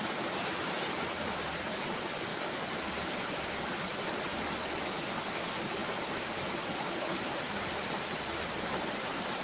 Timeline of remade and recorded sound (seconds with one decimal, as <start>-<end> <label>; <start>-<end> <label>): 0.0-2.3 remade; 2.3-2.9 recorded; 2.9-9.4 remade